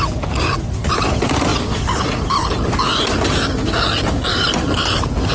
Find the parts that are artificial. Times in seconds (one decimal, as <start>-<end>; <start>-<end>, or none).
none